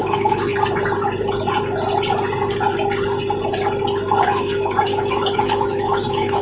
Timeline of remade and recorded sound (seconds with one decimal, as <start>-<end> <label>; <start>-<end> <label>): 0.0-0.5 remade; 0.5-4.3 recorded; 4.3-6.4 remade